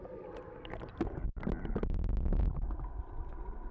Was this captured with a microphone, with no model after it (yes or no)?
yes